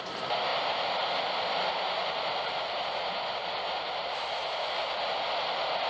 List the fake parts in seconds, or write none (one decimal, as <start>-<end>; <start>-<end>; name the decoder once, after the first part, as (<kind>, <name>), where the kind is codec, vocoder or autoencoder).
none